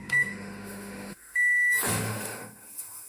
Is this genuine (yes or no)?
no